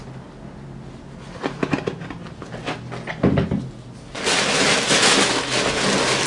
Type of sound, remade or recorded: recorded